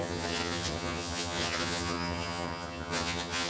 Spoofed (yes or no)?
yes